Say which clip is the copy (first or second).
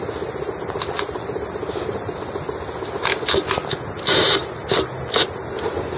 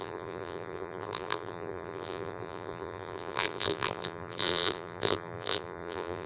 second